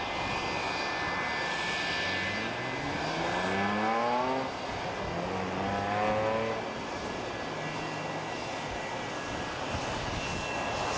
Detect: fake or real real